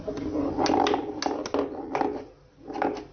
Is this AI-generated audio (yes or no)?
no